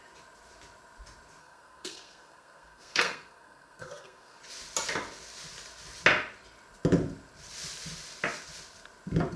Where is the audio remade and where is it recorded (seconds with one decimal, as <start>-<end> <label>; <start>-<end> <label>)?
0.0-1.4 recorded; 1.4-4.4 remade; 4.4-9.4 recorded